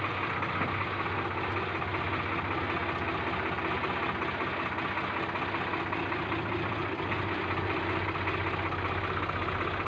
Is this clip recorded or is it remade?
recorded